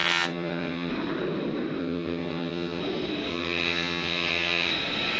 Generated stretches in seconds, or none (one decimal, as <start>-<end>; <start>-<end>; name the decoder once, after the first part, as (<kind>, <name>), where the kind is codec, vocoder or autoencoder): 0.0-0.9 (vocoder, HiFi-GAN); 1.8-2.8; 3.3-4.7